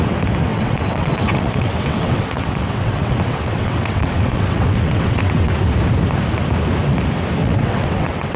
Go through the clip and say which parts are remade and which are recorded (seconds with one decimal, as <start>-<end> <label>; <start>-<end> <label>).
0.0-0.5 recorded; 0.5-5.5 remade; 5.5-7.4 recorded; 7.4-8.4 remade